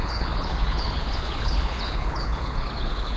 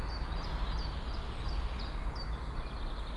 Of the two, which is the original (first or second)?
second